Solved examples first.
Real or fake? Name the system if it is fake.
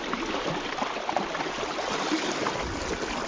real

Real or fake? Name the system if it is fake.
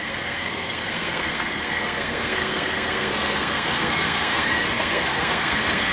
fake, codec, SNAC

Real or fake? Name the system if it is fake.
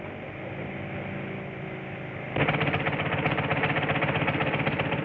real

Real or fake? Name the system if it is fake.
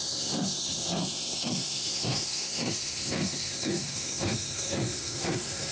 fake, codec, SNAC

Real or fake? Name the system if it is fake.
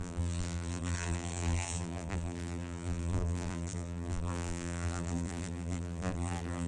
fake, vocoder, BigVGAN v2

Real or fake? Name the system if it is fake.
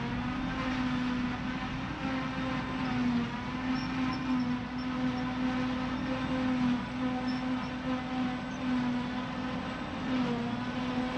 real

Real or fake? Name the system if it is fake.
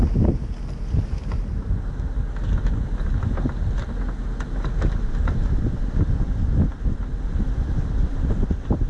real